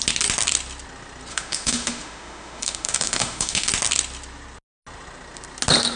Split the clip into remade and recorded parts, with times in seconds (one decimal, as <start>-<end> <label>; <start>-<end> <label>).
0.0-1.3 recorded; 1.3-3.7 remade; 3.7-6.0 recorded